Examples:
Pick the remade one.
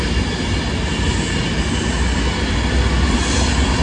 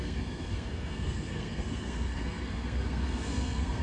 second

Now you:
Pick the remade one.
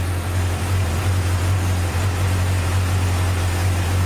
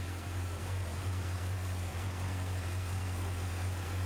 second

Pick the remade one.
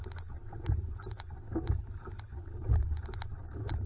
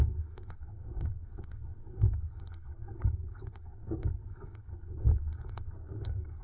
second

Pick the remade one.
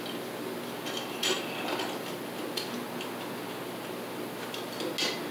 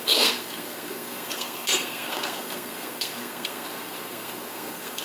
second